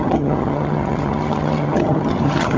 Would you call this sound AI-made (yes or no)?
yes